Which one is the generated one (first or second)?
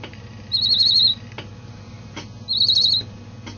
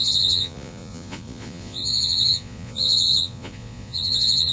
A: second